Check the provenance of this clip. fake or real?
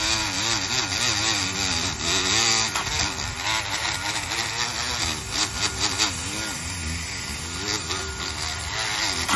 real